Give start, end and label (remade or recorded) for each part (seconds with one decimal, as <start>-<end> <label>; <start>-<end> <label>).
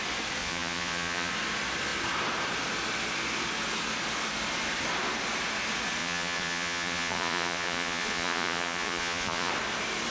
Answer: 0.0-0.4 recorded; 0.4-1.3 remade; 1.3-6.0 recorded; 6.0-9.5 remade; 9.5-10.1 recorded